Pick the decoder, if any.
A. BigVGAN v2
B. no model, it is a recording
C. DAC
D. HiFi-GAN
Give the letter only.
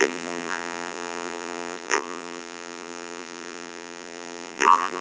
A